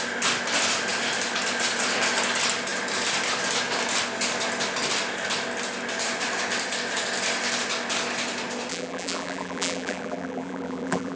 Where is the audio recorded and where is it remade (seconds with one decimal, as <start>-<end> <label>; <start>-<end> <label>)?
0.0-8.7 recorded; 8.7-11.2 remade